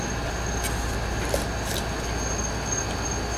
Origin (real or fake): real